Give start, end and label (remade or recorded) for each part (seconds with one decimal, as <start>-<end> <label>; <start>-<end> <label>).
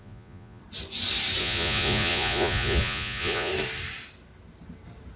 0.0-0.6 remade; 0.6-1.4 recorded; 1.4-3.5 remade; 3.5-5.2 recorded